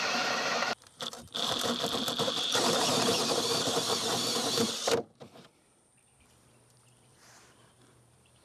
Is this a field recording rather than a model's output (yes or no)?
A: no